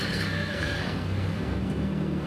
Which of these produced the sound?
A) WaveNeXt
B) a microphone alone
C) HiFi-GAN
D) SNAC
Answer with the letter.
D